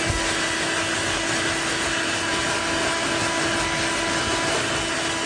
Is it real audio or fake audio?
real